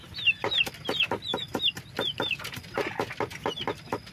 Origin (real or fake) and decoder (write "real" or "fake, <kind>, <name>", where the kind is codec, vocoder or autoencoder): real